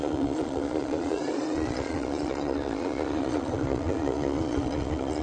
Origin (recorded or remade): remade